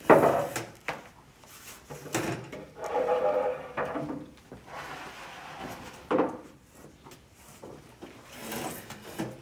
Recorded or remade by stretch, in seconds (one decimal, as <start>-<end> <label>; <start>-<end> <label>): 0.0-9.4 recorded